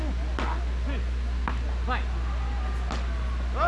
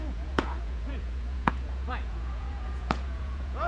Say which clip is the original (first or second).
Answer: first